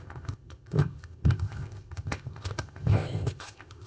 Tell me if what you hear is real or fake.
fake